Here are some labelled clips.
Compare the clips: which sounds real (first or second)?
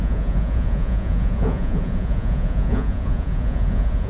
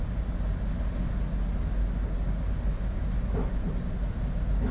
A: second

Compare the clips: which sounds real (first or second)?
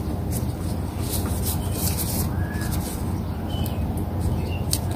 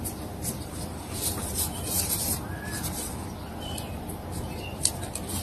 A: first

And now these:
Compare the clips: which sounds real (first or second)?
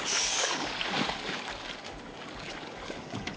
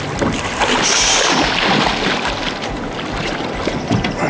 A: second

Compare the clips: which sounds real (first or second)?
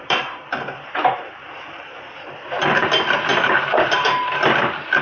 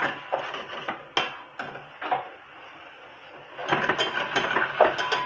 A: second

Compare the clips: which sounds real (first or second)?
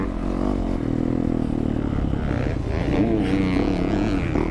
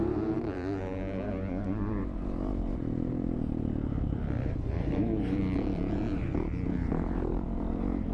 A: first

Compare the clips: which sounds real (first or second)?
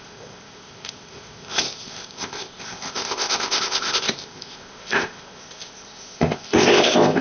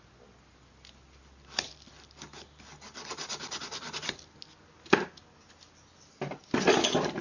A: second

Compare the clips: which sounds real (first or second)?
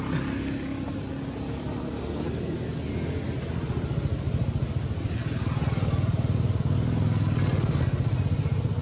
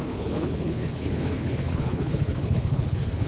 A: first